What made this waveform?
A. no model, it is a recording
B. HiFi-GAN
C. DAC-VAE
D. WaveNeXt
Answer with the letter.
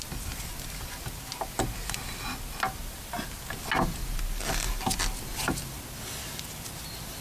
A